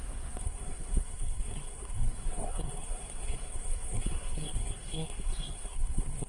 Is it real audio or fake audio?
fake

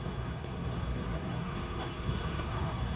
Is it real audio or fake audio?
fake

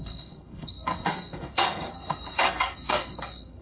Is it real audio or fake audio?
fake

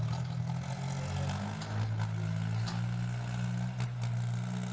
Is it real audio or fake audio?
real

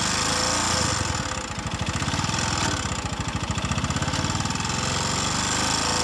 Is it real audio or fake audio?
real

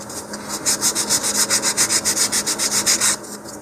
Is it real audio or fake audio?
real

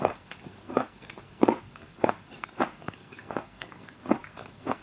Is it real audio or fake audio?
fake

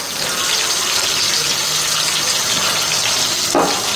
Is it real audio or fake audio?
real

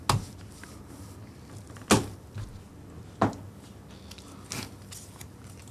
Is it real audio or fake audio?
real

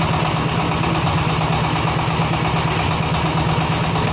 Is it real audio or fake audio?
real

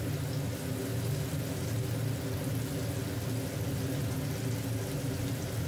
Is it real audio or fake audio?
real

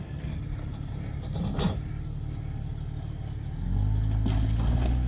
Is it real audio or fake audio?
real